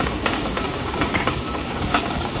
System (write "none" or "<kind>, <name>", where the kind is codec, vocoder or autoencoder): codec, DAC